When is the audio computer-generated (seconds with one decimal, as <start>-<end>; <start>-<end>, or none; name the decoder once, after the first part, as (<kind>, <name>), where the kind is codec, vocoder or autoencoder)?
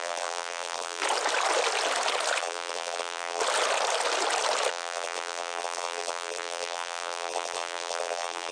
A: 0.0-1.0 (vocoder, BigVGAN v2); 2.4-3.4; 4.7-8.5